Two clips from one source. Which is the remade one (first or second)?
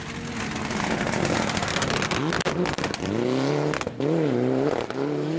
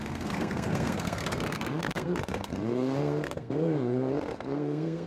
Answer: second